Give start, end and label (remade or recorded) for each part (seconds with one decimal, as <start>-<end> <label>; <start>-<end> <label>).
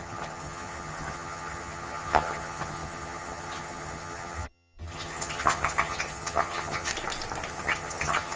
0.0-6.9 remade; 6.9-7.5 recorded; 7.5-8.4 remade